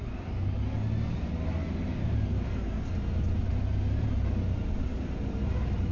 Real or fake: real